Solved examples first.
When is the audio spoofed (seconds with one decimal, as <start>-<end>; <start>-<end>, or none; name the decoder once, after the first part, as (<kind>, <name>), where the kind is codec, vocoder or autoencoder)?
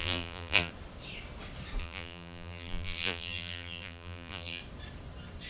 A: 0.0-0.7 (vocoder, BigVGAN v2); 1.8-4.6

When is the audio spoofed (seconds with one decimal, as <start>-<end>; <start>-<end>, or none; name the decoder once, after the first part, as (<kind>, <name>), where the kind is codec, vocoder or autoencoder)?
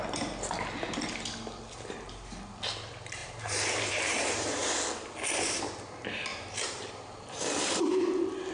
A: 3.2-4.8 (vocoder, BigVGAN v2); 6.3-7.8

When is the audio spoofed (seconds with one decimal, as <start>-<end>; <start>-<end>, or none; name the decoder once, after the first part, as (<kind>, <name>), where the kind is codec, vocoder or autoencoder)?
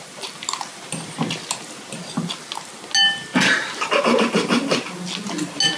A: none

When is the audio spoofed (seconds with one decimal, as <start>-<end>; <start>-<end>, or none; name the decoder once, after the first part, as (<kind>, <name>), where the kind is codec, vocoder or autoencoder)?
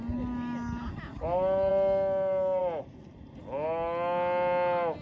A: none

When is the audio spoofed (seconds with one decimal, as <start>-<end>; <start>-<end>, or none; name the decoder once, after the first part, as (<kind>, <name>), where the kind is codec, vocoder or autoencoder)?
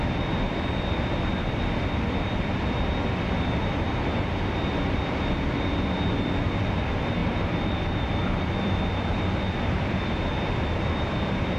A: 0.0-11.6 (vocoder, BigVGAN v2)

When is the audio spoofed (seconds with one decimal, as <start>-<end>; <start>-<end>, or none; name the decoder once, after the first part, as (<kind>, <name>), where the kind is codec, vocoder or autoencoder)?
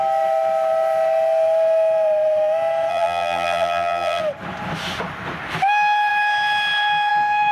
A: 2.9-4.2 (vocoder, BigVGAN v2)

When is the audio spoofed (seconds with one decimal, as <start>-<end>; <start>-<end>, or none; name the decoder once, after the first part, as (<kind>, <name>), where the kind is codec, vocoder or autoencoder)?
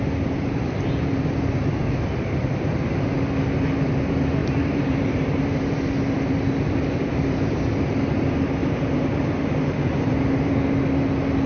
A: 4.4-5.8 (vocoder, BigVGAN v2); 8.6-10.5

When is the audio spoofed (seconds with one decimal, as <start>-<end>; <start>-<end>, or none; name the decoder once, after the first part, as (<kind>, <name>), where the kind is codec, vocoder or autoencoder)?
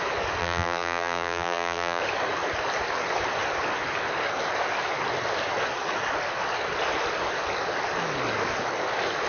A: 0.4-2.0 (vocoder, BigVGAN v2)